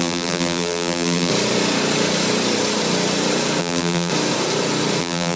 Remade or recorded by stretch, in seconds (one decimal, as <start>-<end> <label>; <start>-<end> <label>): 0.0-1.3 remade; 1.3-3.6 recorded; 3.6-4.1 remade; 4.1-5.0 recorded; 5.0-5.4 remade